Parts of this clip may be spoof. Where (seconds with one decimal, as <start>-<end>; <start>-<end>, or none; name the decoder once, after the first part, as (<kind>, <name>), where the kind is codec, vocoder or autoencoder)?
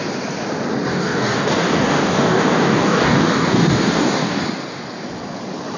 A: 0.9-4.4 (codec, DAC)